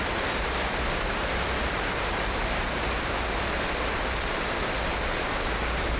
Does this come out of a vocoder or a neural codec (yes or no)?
yes